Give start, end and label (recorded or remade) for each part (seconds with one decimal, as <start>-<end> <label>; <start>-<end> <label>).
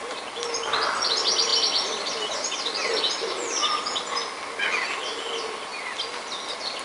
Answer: 0.0-6.8 recorded